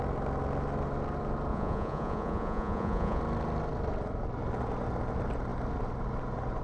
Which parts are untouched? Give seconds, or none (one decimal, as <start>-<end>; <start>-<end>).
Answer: 0.0-1.5; 3.2-6.6